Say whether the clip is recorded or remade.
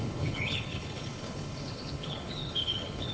remade